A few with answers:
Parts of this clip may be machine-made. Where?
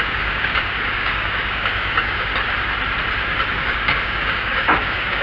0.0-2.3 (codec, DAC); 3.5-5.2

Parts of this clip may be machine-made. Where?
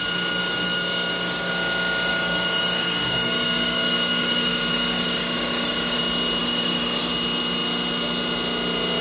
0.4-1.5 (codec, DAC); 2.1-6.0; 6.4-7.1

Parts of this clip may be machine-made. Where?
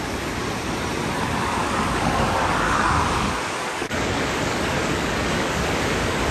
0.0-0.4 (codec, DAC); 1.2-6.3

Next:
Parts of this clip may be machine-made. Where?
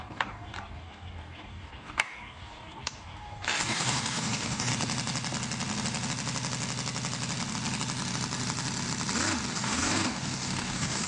0.0-4.7 (codec, DAC); 9.5-11.1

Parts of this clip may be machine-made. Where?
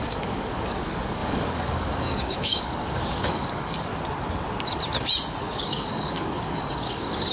0.0-3.9 (codec, DAC); 5.4-7.3